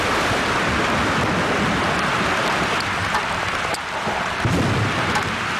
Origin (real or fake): real